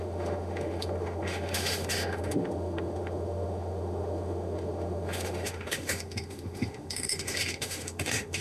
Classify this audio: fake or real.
fake